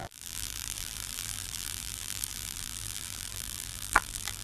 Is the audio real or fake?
fake